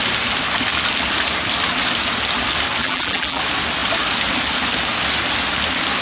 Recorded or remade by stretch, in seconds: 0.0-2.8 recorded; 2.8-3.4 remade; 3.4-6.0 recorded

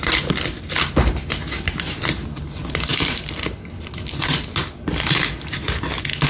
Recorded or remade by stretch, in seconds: 0.0-6.3 recorded

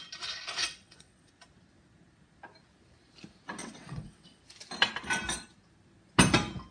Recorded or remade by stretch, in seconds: 0.0-0.6 recorded; 0.6-1.3 remade; 1.3-3.6 recorded; 3.6-4.4 remade; 4.4-6.7 recorded

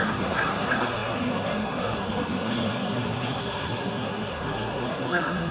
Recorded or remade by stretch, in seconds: 0.0-5.5 remade

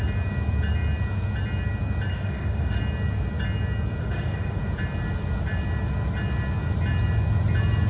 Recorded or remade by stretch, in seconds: 0.0-2.1 recorded; 2.1-2.8 remade; 2.8-4.0 recorded; 4.0-4.6 remade; 4.6-7.9 recorded